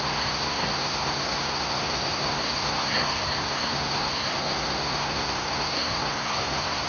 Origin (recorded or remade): remade